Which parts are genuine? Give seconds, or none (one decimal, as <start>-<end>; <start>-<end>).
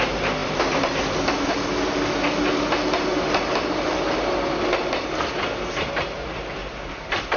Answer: 0.0-0.4; 1.5-6.6